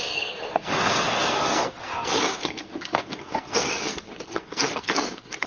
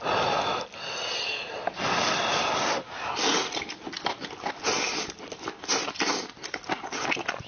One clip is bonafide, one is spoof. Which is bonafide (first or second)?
second